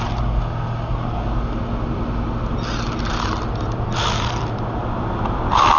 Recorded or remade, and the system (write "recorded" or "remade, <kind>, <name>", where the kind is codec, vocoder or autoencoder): recorded